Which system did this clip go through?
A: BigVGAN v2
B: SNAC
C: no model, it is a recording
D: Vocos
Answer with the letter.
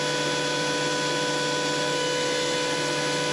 C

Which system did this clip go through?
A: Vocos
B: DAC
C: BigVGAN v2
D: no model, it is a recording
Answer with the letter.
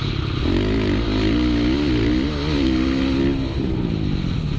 D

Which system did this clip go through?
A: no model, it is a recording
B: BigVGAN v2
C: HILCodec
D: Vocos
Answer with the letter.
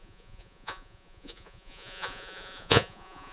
D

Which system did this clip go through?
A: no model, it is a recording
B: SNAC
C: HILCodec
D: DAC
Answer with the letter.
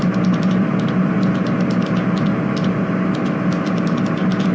A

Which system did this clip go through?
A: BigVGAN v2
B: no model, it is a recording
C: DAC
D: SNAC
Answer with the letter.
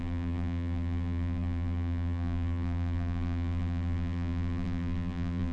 A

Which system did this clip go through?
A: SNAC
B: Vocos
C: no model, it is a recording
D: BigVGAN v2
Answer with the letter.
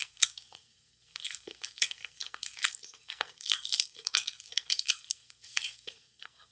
A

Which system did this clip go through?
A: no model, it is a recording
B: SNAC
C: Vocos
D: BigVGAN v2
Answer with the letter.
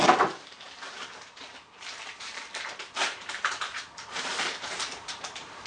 D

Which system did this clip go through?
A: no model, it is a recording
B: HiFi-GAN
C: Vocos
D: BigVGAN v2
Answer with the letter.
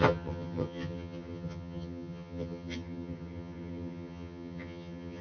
B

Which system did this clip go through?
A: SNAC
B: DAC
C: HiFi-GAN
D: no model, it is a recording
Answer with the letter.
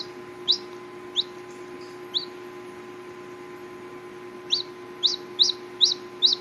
D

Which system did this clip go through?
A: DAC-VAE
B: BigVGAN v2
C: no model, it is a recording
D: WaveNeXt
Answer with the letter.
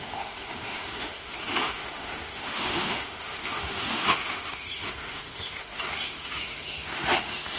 A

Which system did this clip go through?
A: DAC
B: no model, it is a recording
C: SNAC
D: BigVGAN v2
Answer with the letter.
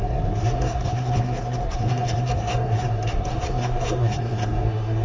C